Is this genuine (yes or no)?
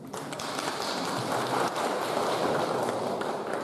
yes